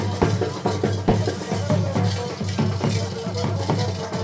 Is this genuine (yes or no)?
yes